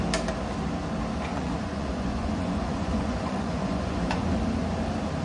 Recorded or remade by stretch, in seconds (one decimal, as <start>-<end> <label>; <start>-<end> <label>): 0.0-1.3 recorded; 1.3-4.4 remade; 4.4-5.2 recorded